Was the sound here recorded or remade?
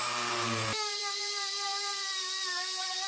remade